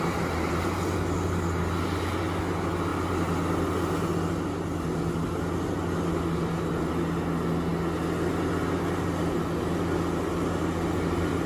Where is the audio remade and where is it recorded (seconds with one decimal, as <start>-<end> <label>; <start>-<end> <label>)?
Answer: 0.0-11.5 recorded